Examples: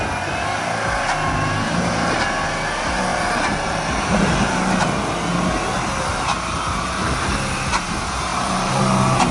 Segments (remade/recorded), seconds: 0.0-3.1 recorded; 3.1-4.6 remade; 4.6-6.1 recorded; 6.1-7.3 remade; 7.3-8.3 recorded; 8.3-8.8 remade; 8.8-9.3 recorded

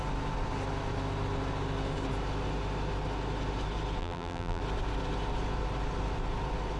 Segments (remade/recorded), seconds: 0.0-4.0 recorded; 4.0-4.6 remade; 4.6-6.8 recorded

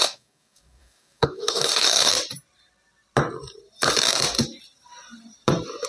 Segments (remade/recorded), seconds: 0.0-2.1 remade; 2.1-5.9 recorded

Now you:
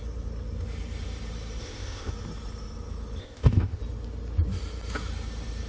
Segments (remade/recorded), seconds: 0.0-1.6 recorded; 1.6-2.1 remade; 2.1-3.2 recorded; 3.2-3.8 remade; 3.8-5.7 recorded

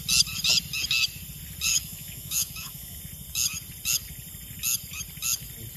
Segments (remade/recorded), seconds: 0.0-1.7 recorded; 1.7-3.0 remade; 3.0-5.8 recorded

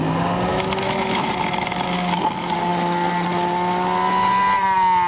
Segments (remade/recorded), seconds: 0.0-0.5 recorded; 0.5-1.3 remade; 1.3-5.1 recorded

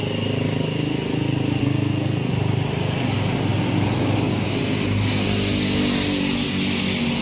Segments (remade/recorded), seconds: 0.0-1.6 recorded; 1.6-2.3 remade; 2.3-7.2 recorded

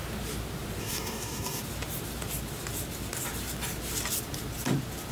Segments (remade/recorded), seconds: 0.0-0.8 recorded; 0.8-1.6 remade; 1.6-5.1 recorded